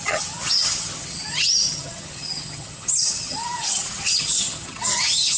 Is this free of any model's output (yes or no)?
no